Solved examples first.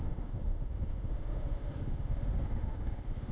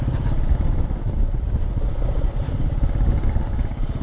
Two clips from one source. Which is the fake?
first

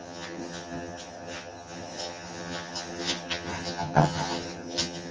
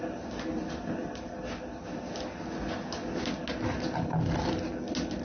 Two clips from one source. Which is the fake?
first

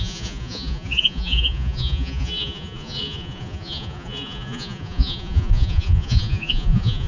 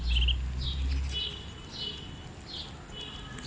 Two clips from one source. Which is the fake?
first